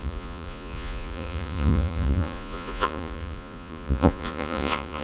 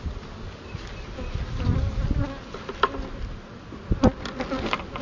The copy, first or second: first